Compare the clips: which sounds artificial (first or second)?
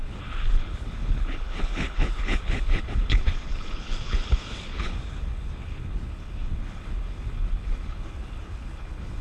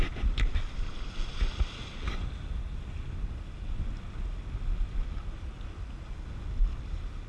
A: first